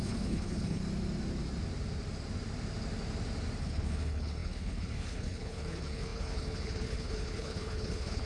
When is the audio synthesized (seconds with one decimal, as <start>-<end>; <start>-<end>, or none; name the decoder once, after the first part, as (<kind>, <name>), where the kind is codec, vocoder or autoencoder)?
0.0-0.8 (codec, HILCodec); 3.6-8.3

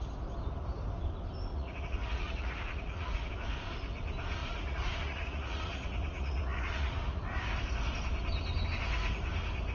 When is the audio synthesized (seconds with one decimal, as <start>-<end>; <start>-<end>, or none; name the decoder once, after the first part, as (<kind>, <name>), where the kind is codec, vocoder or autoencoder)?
1.5-3.3 (vocoder, Vocos); 4.4-7.2